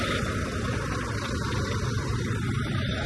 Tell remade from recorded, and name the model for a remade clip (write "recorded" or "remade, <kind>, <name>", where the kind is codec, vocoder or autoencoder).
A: remade, vocoder, BigVGAN v2